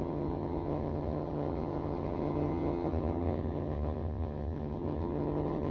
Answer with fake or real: fake